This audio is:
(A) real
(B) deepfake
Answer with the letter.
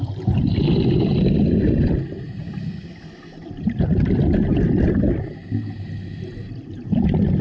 A